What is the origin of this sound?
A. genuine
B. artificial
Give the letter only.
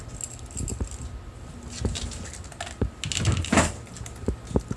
A